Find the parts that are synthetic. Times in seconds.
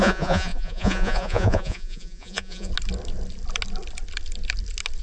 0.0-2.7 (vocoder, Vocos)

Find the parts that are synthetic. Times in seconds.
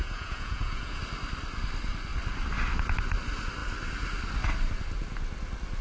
0.0-1.0 (vocoder, Vocos)